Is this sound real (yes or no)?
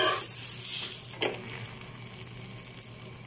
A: yes